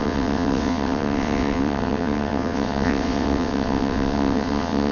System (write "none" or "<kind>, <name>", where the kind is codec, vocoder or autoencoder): vocoder, WaveNeXt